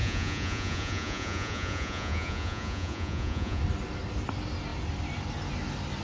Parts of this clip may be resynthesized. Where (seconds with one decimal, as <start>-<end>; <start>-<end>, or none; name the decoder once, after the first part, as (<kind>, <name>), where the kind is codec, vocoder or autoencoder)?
0.0-3.6 (vocoder, Vocos)